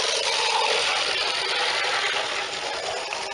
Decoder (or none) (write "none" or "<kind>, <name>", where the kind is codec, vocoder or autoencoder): none